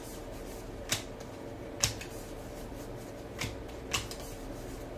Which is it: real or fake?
real